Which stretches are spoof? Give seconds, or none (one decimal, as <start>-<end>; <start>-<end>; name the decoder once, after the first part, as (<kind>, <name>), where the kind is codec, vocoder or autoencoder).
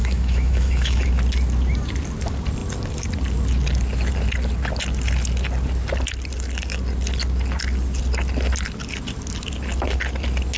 0.0-1.1 (autoencoder, DAC-VAE)